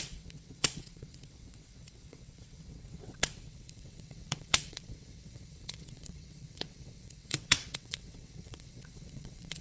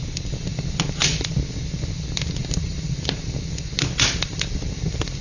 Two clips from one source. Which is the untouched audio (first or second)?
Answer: second